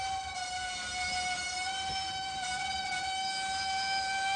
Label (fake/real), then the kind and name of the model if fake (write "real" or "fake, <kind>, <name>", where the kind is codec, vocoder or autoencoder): real